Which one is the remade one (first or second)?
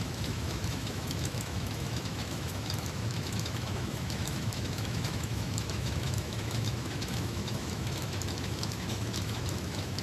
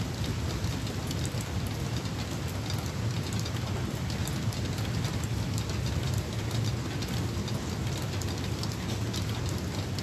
first